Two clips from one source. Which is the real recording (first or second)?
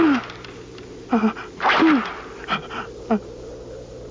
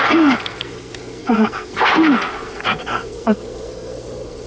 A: first